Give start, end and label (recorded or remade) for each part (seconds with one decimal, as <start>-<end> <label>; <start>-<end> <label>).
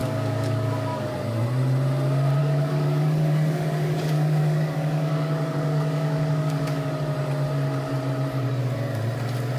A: 0.0-1.1 remade; 1.1-2.4 recorded; 2.4-6.9 remade; 6.9-9.6 recorded